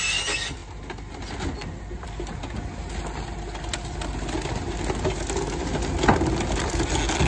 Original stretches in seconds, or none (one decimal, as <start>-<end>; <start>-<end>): 0.0-7.3